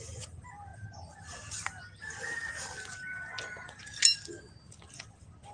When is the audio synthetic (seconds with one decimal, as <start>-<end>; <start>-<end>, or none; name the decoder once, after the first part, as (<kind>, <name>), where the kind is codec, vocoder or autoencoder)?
none